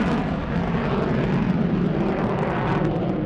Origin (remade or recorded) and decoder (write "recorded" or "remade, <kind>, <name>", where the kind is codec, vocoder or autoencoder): recorded